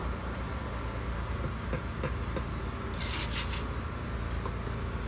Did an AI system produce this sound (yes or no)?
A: no